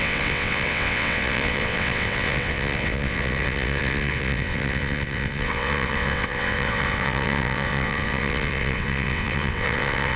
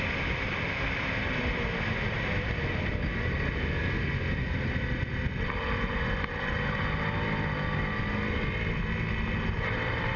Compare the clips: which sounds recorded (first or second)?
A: second